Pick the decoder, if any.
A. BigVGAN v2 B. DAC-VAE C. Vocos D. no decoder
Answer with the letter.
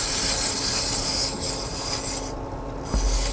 D